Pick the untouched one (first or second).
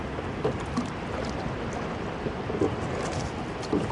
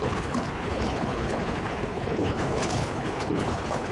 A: first